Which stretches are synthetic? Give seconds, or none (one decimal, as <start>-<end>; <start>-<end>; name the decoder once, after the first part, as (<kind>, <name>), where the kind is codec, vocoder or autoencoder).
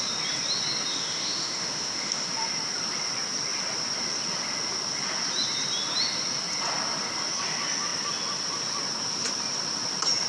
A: 0.9-2.3 (autoencoder, DAC-VAE)